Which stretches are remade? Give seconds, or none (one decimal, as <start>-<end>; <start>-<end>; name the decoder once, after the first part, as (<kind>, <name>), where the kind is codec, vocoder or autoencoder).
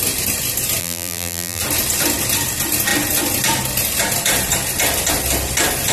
0.8-1.6 (vocoder, BigVGAN v2)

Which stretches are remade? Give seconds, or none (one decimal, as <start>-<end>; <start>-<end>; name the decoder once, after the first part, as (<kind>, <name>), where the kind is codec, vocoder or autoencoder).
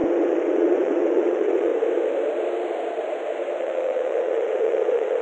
0.0-1.7 (vocoder, WaveNeXt); 3.6-5.2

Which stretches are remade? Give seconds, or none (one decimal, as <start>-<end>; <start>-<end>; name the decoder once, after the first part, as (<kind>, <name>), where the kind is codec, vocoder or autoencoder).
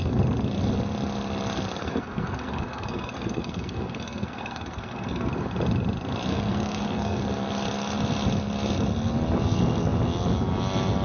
1.8-5.3 (codec, SNAC); 6.3-7.2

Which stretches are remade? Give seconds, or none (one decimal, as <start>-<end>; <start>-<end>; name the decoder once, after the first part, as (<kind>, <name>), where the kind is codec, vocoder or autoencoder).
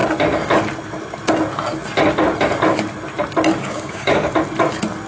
3.6-4.3 (codec, DAC)